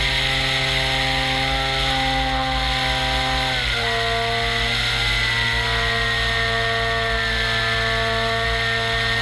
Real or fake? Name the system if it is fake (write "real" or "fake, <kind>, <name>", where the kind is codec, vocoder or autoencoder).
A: real